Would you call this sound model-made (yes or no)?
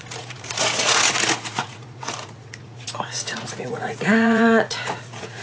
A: yes